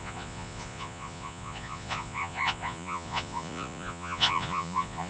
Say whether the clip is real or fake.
fake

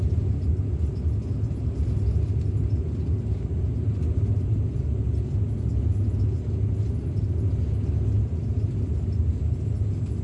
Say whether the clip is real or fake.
real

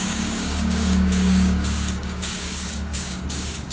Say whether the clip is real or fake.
fake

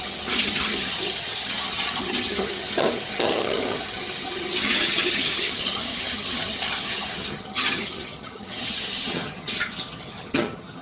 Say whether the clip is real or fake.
fake